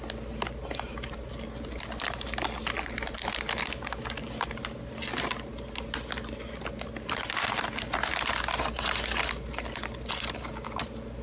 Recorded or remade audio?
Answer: recorded